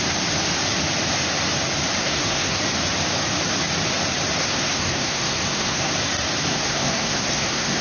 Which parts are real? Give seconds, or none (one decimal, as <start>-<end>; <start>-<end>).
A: 0.0-2.0; 2.6-4.4; 5.9-6.5